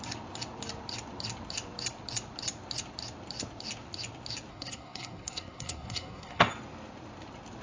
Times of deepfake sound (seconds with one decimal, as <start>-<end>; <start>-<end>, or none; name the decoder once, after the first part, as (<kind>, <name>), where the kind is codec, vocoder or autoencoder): 4.5-6.5 (codec, SNAC)